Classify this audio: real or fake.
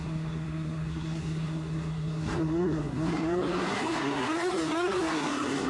fake